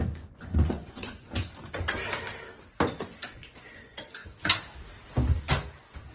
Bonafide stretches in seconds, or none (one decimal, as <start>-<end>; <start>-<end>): 1.4-2.9; 4.2-6.1